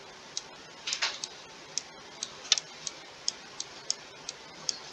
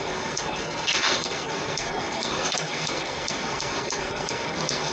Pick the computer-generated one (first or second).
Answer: second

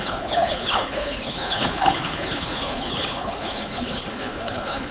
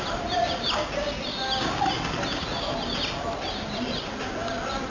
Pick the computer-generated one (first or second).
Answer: first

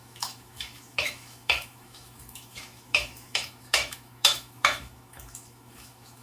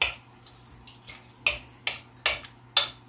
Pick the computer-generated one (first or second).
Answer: first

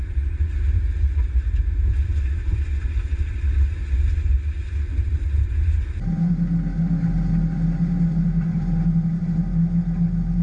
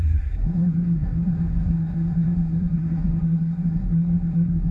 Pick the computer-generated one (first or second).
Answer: second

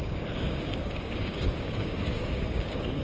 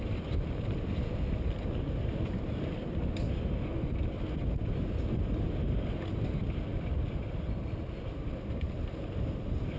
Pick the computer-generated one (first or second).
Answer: first